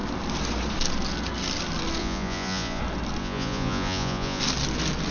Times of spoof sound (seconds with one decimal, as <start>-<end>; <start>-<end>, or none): 2.0-2.8; 3.2-4.4